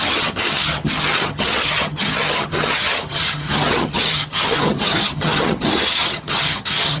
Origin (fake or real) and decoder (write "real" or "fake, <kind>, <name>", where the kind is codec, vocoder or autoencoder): fake, vocoder, HiFi-GAN